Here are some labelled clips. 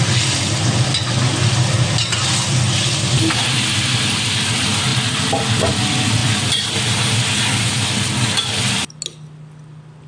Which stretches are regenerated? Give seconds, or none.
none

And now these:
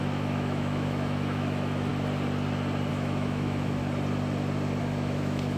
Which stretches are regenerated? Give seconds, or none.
0.0-1.9 (autoencoder, DAC-VAE); 2.9-3.8; 4.8-5.6

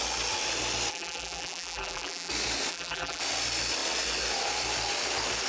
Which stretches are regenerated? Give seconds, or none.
0.9-2.3 (vocoder, BigVGAN v2); 2.7-3.2

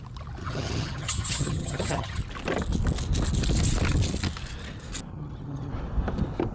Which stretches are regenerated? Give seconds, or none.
0.4-2.2 (vocoder, HiFi-GAN); 5.1-5.7

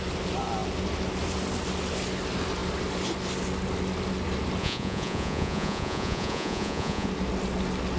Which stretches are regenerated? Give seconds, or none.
4.6-7.1 (vocoder, Vocos)

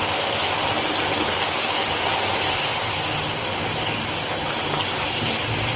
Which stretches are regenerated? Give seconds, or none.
none

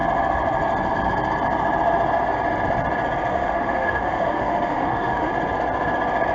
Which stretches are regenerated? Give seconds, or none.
3.3-5.3 (autoencoder, DAC-VAE)

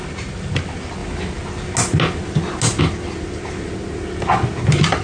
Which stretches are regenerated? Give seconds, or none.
none